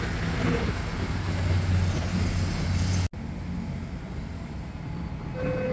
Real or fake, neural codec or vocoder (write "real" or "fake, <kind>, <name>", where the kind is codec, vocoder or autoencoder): real